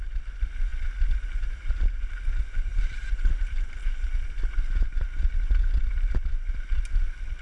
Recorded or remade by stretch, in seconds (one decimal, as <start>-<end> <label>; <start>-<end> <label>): 0.0-2.7 recorded; 2.7-4.3 remade; 4.3-7.4 recorded